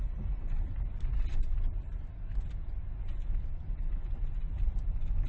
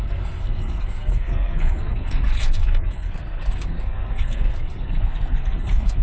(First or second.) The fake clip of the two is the second